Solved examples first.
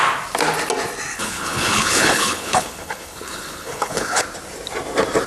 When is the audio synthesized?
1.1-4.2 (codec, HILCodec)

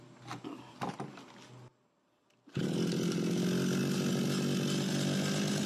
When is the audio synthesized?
none

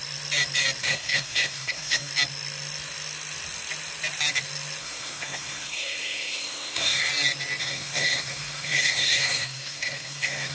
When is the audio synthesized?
0.8-2.1 (codec, SNAC); 4.8-7.1; 7.6-10.5

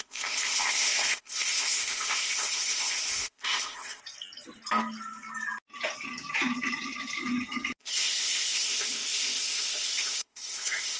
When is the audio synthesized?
0.0-4.0 (codec, ZipCodec); 7.8-11.0

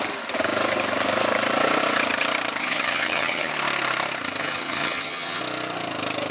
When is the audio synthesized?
2.6-3.5 (vocoder, HiFi-GAN); 4.4-5.4